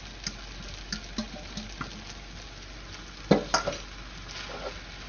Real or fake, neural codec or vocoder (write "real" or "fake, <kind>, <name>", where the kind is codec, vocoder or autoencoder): real